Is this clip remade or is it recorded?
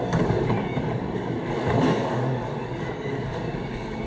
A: remade